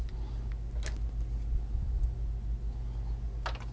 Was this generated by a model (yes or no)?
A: no